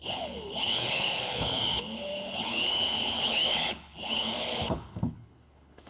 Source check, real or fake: fake